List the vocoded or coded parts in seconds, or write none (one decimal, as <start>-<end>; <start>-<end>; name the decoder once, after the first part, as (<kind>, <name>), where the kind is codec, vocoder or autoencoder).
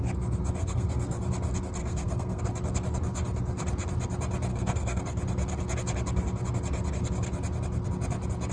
0.6-1.2 (codec, SNAC); 1.8-2.4; 4.5-5.0